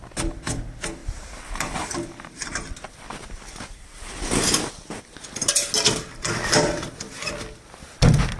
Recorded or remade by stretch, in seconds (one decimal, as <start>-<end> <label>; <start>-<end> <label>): 0.0-1.0 recorded; 1.0-2.5 remade; 2.5-8.4 recorded

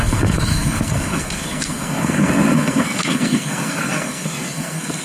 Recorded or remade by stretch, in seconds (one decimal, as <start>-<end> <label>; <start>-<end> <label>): 0.0-5.0 remade

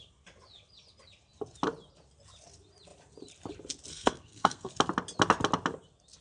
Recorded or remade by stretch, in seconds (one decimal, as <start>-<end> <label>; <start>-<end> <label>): 0.0-3.9 recorded; 3.9-4.7 remade; 4.7-6.2 recorded